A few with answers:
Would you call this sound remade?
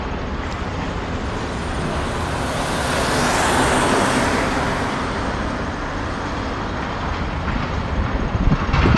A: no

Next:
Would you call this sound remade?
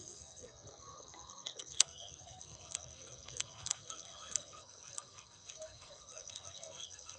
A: yes